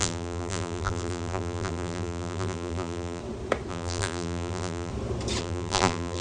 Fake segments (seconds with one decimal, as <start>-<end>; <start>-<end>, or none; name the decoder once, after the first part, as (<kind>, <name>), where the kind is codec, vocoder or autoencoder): 0.0-3.2 (vocoder, BigVGAN v2); 3.7-4.9; 5.4-6.2